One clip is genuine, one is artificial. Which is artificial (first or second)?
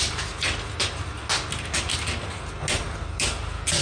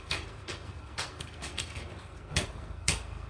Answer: second